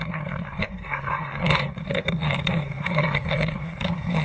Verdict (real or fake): fake